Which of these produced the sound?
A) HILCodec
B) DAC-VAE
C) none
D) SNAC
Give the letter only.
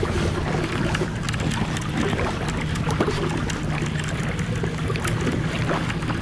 C